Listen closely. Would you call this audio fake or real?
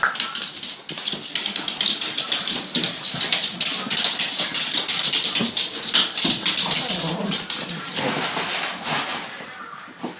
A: real